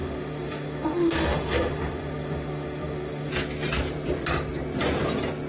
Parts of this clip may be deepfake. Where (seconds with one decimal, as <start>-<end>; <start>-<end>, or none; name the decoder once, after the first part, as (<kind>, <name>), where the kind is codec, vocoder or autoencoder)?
0.0-3.3 (autoencoder, DAC-VAE)